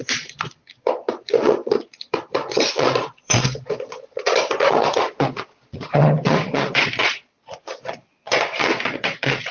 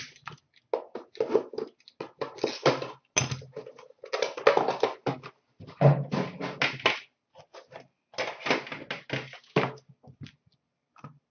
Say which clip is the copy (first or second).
first